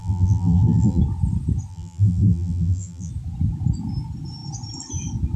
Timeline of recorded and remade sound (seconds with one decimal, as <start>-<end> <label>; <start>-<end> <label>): 0.0-1.0 remade; 1.0-1.7 recorded; 1.7-3.1 remade; 3.1-5.4 recorded

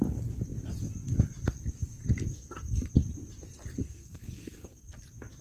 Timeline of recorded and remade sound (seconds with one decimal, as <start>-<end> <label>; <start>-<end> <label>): 0.0-2.3 recorded; 2.3-2.9 remade; 2.9-3.8 recorded; 3.8-4.9 remade; 4.9-5.4 recorded